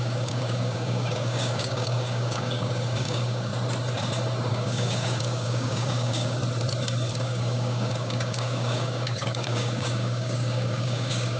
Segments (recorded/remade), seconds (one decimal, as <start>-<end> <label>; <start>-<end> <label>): 0.0-3.5 remade; 3.5-4.5 recorded; 4.5-6.4 remade; 6.4-7.1 recorded; 7.1-11.4 remade